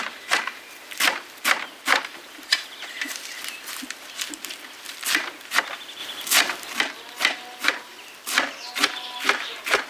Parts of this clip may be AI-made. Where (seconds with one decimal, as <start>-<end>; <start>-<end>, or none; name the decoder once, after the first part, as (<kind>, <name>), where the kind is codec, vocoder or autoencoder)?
0.0-9.9 (vocoder, BigVGAN v2)